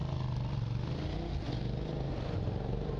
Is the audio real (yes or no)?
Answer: yes